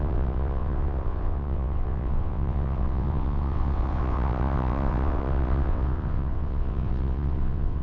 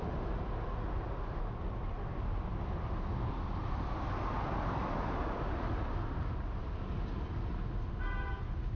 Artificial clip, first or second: first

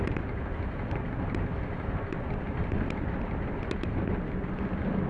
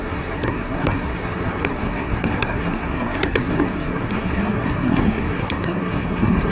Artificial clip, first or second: second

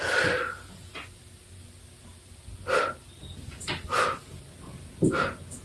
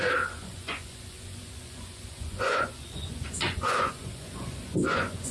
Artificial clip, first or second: second